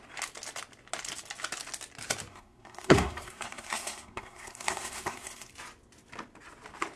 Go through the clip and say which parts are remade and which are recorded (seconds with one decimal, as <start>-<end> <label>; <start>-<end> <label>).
0.0-2.3 recorded; 2.3-5.5 remade; 5.5-7.0 recorded